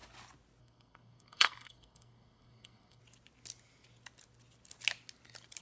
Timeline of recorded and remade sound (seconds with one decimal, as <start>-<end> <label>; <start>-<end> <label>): 0.0-0.6 recorded; 0.6-3.0 remade; 3.0-5.6 recorded